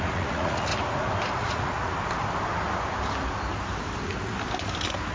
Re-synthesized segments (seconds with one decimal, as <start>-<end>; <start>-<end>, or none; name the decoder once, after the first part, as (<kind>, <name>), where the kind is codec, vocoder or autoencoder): 0.0-0.7 (vocoder, Vocos); 1.3-1.9